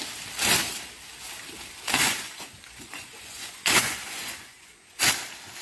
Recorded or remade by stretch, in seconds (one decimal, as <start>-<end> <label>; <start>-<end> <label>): 0.0-2.0 recorded; 2.0-5.0 remade; 5.0-5.6 recorded